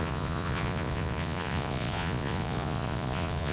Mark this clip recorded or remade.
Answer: remade